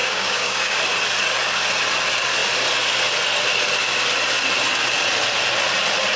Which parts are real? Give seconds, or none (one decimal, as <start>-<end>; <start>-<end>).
0.8-6.2